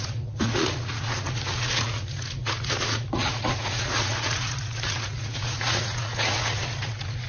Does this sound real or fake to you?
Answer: fake